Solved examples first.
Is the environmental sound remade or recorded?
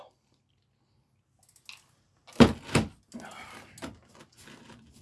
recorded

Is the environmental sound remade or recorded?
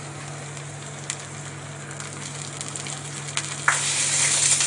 recorded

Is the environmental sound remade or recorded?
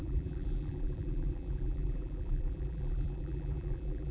remade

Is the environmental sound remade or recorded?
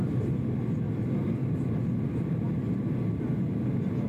recorded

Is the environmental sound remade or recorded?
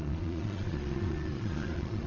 remade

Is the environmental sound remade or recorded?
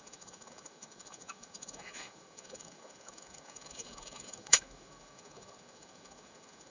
remade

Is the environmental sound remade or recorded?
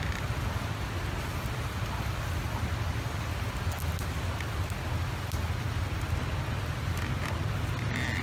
recorded